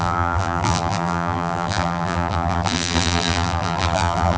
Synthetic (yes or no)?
yes